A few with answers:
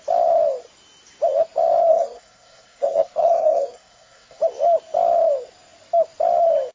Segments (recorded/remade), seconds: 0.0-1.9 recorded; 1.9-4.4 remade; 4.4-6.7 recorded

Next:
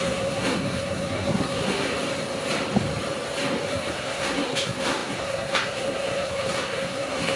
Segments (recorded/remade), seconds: 0.0-1.9 remade; 1.9-3.7 recorded; 3.7-7.4 remade

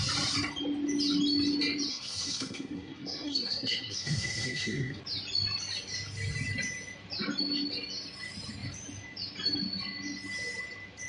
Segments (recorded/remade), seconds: 0.0-1.9 recorded; 1.9-5.0 remade; 5.0-11.1 recorded

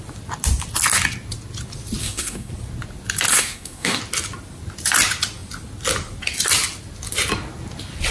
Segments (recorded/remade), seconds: 0.0-2.0 recorded; 2.0-2.5 remade; 2.5-3.3 recorded; 3.3-4.0 remade; 4.0-8.1 recorded

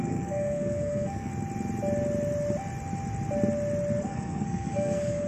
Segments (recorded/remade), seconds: 0.0-1.3 remade; 1.3-4.0 recorded; 4.0-5.3 remade

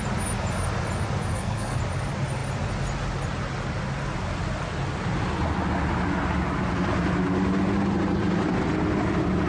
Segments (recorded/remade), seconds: 0.0-1.3 recorded; 1.3-1.8 remade; 1.8-9.5 recorded

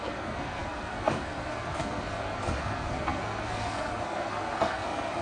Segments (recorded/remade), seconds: 0.0-5.2 remade